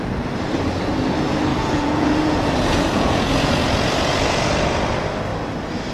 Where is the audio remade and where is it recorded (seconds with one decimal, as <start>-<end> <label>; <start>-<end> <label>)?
0.0-1.5 recorded; 1.5-4.5 remade; 4.5-5.9 recorded